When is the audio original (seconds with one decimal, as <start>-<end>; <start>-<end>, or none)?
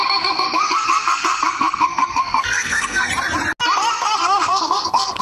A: 3.1-3.8